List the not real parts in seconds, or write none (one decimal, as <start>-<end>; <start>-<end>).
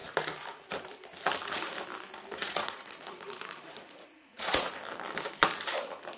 2.4-4.7